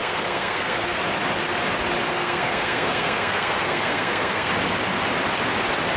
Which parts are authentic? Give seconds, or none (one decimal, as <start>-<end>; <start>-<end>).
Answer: 1.0-2.1; 4.5-6.0